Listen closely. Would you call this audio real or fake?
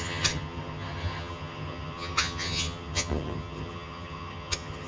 fake